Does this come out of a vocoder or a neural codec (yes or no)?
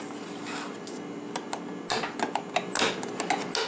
no